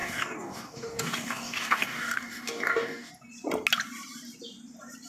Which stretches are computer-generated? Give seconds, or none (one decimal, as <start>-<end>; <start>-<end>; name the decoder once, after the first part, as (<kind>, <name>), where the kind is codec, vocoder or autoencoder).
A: 0.0-3.1 (codec, DAC)